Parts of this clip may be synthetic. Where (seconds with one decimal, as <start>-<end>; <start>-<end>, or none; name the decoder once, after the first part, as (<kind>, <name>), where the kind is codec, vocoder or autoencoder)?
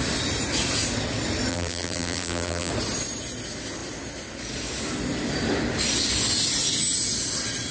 1.5-2.7 (vocoder, BigVGAN v2)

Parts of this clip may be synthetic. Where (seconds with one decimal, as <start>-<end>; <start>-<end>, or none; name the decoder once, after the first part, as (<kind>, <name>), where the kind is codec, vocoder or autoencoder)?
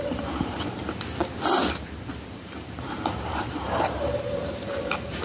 0.0-0.8 (vocoder, BigVGAN v2); 2.3-5.2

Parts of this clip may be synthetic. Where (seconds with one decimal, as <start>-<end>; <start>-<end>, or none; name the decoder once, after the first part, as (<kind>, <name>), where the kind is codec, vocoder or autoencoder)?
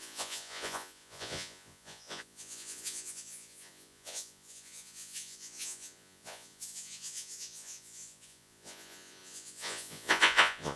0.0-10.8 (vocoder, Vocos)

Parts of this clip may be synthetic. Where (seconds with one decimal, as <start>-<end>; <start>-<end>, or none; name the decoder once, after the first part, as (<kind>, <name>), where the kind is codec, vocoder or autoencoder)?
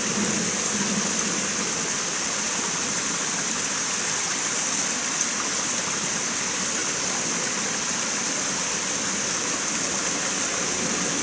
none